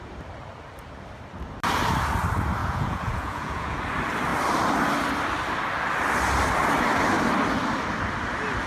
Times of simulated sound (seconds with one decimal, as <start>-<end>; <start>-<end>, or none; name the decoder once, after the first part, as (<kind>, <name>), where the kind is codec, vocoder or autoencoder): 2.6-3.8 (vocoder, Vocos)